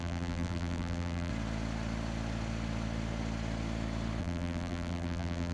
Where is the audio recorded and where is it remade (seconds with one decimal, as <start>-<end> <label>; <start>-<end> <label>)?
0.0-1.3 remade; 1.3-4.2 recorded; 4.2-5.5 remade

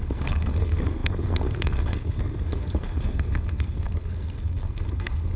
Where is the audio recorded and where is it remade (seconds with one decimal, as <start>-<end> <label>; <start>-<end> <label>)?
0.0-5.4 remade

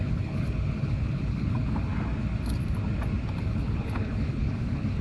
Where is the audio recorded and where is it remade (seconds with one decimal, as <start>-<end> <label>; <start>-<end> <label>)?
0.0-1.9 remade; 1.9-3.4 recorded; 3.4-5.0 remade